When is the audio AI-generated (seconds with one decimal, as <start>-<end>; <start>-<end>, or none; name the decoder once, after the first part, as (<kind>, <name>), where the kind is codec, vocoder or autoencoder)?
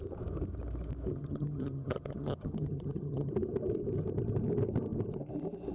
1.1-3.3 (vocoder, HiFi-GAN)